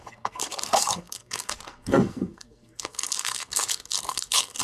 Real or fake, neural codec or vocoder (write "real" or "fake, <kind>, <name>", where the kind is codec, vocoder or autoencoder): fake, codec, SNAC